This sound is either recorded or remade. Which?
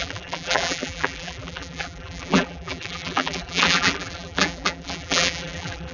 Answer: remade